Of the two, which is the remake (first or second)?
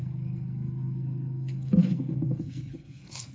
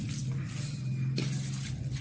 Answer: first